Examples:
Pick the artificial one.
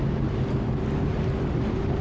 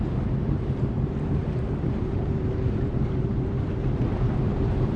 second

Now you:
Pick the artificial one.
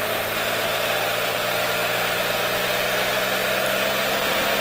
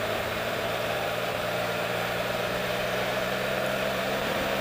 second